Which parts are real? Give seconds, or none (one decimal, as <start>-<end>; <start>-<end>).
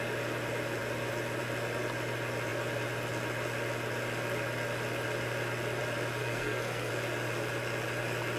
0.0-6.2; 6.9-8.4